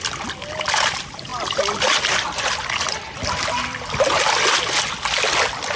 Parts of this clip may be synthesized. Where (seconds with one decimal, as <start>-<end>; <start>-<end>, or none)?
none